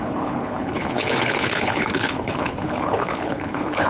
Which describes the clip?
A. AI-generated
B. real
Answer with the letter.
A